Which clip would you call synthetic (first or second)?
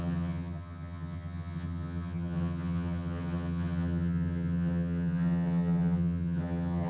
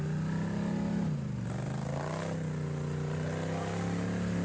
first